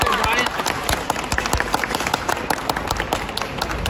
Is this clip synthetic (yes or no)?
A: no